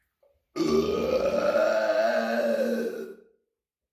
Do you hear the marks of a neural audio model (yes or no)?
no